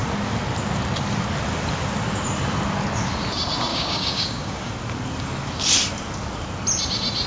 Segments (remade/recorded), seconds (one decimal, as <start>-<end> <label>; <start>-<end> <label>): 0.0-3.7 recorded; 3.7-4.7 remade; 4.7-7.3 recorded